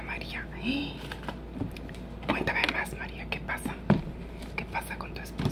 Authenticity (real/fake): real